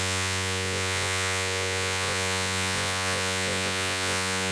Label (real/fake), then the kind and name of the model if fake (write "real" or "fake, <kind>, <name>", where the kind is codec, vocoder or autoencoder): fake, vocoder, Vocos